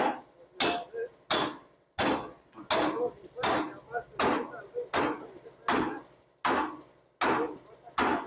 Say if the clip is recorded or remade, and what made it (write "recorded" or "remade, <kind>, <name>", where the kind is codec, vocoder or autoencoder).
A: recorded